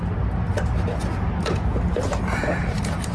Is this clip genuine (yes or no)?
yes